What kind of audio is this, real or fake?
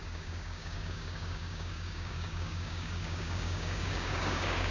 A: fake